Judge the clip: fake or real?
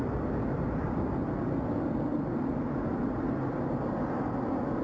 real